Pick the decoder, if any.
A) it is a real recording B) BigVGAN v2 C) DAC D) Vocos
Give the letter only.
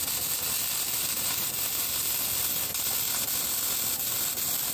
A